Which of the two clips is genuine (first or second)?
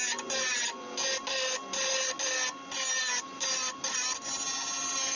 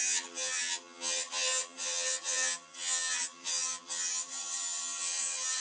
first